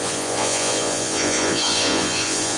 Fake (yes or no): yes